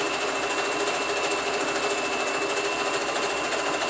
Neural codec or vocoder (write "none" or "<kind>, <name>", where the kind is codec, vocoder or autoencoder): none